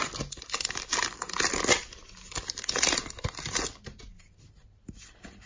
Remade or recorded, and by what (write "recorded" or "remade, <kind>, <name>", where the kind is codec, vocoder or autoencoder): recorded